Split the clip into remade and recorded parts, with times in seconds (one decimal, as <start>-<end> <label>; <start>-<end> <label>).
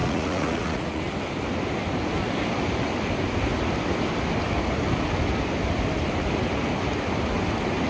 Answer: 0.0-1.0 remade; 1.0-7.9 recorded